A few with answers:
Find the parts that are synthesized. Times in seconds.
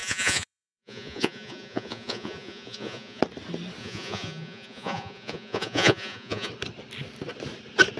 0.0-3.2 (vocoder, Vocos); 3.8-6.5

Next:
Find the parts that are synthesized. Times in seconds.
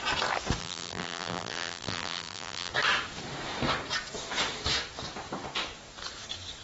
0.6-2.7 (vocoder, BigVGAN v2)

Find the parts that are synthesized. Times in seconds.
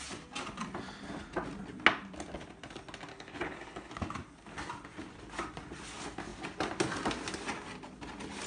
3.1-3.9 (codec, HILCodec)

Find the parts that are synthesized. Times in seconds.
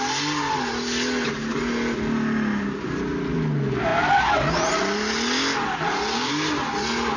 none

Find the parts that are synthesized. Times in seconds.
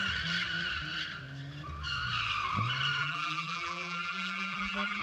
3.0-5.0 (vocoder, BigVGAN v2)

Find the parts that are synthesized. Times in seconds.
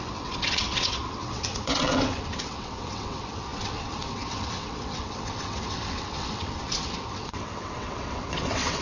0.0-8.8 (vocoder, WaveNeXt)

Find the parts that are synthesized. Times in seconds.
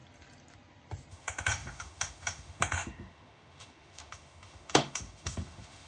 1.1-5.9 (autoencoder, DAC-VAE)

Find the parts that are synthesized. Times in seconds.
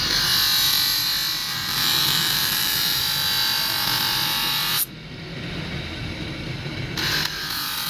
1.4-3.0 (vocoder, BigVGAN v2)